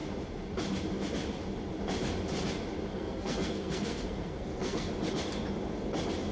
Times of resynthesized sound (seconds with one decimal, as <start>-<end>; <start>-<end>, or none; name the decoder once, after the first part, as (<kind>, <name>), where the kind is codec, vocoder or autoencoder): 2.9-4.9 (codec, SNAC)